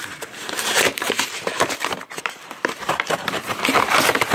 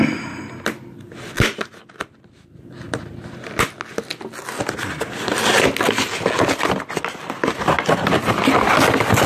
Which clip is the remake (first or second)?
first